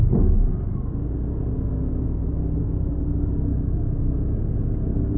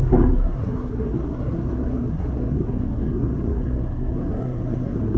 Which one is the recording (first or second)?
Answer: first